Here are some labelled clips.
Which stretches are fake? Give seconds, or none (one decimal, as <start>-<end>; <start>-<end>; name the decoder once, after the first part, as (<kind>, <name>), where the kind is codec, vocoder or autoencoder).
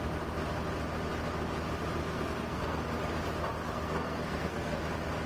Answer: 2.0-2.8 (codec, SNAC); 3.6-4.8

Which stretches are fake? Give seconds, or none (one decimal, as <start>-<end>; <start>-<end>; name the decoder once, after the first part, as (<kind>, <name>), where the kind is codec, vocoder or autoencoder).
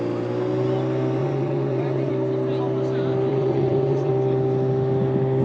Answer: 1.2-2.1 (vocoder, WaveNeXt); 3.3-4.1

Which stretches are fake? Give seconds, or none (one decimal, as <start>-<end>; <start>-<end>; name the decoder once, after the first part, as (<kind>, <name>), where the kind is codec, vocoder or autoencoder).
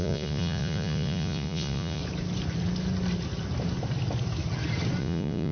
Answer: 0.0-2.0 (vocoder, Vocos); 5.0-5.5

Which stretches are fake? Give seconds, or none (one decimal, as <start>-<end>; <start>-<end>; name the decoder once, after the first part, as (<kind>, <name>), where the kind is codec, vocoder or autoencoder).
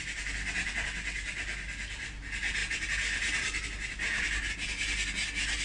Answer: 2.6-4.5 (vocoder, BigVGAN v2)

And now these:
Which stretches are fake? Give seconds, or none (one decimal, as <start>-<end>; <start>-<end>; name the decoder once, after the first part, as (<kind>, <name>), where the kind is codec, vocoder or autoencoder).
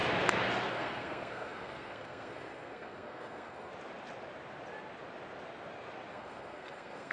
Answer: 0.7-3.7 (codec, SNAC); 6.1-7.1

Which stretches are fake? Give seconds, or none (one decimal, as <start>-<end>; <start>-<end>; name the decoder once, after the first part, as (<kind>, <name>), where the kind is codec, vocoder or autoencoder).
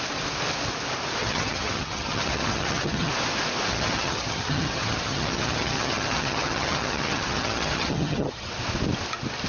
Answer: 1.2-3.1 (vocoder, HiFi-GAN); 3.7-8.5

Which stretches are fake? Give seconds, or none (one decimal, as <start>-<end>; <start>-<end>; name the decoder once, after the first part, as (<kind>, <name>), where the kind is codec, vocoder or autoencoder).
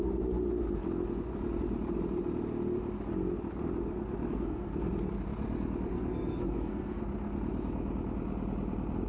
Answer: 4.3-4.9 (codec, SNAC); 5.9-7.0